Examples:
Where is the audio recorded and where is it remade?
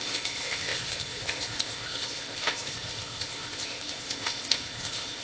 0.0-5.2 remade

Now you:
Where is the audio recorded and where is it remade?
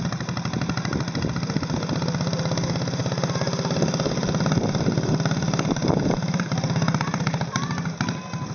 0.0-3.0 recorded; 3.0-7.2 remade; 7.2-8.5 recorded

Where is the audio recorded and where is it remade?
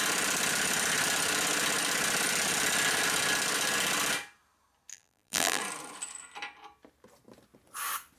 0.0-4.9 recorded; 4.9-5.6 remade; 5.6-8.2 recorded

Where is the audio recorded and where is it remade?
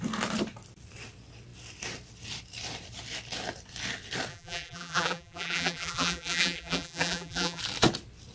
0.0-4.3 recorded; 4.3-7.6 remade; 7.6-8.3 recorded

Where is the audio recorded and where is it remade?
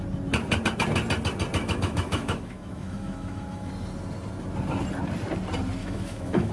0.0-1.6 recorded; 1.6-3.7 remade; 3.7-5.8 recorded; 5.8-6.5 remade